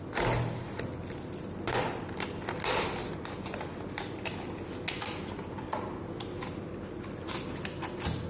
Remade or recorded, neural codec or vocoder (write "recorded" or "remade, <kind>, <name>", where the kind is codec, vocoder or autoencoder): recorded